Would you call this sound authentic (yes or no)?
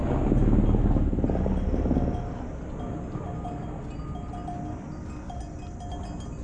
yes